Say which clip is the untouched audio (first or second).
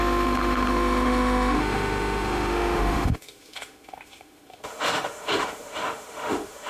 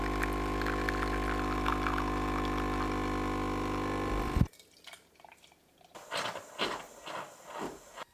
second